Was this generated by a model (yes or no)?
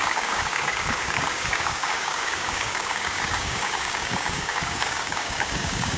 yes